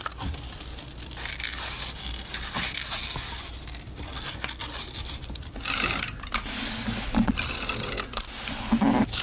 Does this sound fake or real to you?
real